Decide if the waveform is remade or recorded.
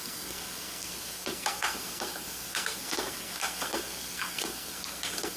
remade